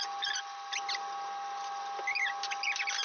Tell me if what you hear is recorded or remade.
recorded